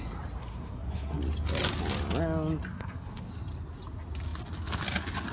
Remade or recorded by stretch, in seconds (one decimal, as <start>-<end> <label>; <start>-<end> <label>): 0.0-0.4 recorded; 0.4-1.2 remade; 1.2-2.7 recorded; 2.7-3.3 remade; 3.3-5.3 recorded